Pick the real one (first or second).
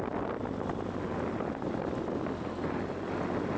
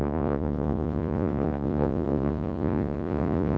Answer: first